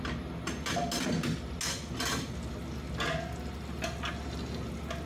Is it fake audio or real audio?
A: real